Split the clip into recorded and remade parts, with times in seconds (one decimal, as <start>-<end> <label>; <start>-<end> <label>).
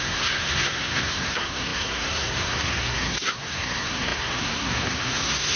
0.0-5.6 remade